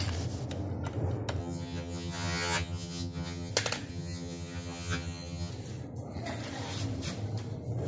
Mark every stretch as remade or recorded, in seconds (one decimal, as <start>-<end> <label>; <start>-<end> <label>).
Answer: 0.0-1.4 recorded; 1.4-3.5 remade; 3.5-3.9 recorded; 3.9-5.5 remade; 5.5-7.9 recorded